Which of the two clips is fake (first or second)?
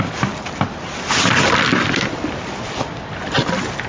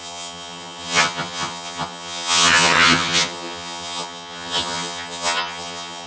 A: second